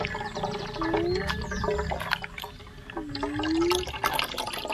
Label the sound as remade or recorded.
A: recorded